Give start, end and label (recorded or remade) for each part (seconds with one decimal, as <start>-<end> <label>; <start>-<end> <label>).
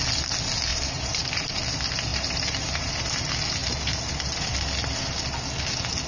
0.0-0.7 recorded; 0.7-1.5 remade; 1.5-2.1 recorded; 2.1-2.9 remade; 2.9-3.6 recorded; 3.6-4.1 remade; 4.1-6.1 recorded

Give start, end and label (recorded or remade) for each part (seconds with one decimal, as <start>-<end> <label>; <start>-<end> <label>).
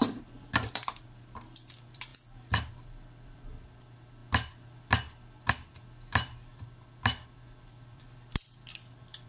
0.0-9.3 remade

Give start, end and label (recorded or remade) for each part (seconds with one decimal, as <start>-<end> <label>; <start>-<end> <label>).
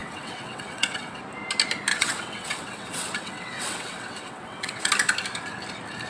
0.0-1.2 remade; 1.2-1.9 recorded; 1.9-4.9 remade; 4.9-6.1 recorded